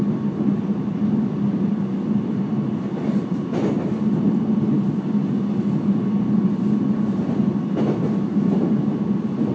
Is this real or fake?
real